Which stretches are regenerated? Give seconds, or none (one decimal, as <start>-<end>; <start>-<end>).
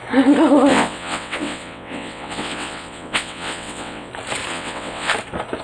0.7-4.1; 4.5-5.1